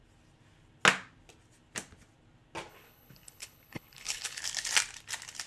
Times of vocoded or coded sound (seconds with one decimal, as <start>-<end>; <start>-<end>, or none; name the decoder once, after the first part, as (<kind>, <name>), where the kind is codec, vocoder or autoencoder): 2.7-4.4 (codec, HILCodec)